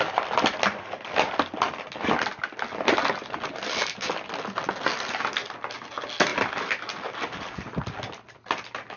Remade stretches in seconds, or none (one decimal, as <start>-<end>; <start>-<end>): none

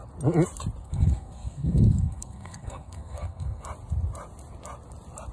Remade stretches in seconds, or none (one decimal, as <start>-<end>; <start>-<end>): 0.8-3.6

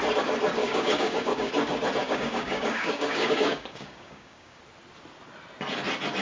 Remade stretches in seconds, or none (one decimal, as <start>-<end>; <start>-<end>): 0.6-1.5; 2.0-4.6